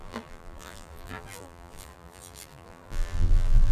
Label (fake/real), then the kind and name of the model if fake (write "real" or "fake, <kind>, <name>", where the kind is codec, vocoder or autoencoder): fake, vocoder, BigVGAN v2